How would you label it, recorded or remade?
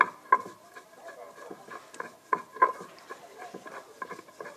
recorded